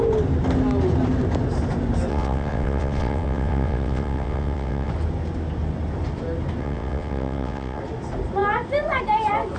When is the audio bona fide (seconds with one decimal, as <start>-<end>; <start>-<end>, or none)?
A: 0.0-2.1; 4.9-6.6; 7.8-9.6

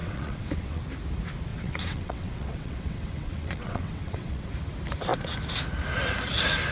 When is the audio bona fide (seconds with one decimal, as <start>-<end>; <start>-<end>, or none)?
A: 0.8-1.5; 4.5-6.7

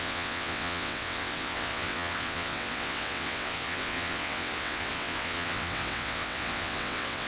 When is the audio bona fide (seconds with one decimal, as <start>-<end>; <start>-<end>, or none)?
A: none

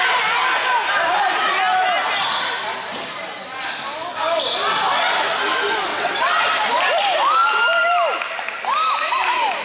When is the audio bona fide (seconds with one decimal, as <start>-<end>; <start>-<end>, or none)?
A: 0.0-5.9; 6.4-9.6